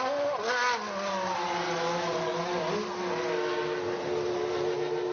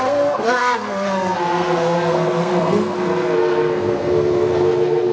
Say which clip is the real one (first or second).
first